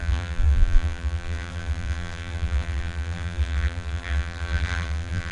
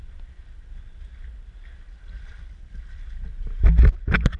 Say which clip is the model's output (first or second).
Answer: first